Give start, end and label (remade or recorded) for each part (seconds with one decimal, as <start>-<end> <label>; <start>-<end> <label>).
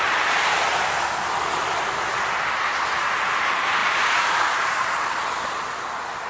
0.0-3.8 recorded; 3.8-5.2 remade; 5.2-6.3 recorded